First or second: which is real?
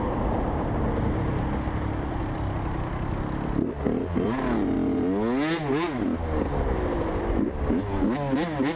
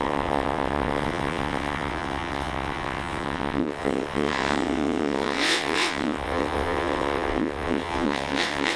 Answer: first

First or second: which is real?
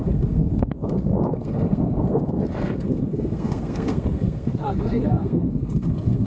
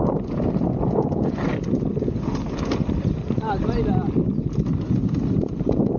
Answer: second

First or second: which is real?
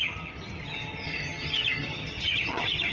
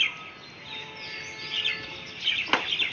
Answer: second